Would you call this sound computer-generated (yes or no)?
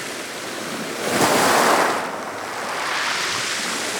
no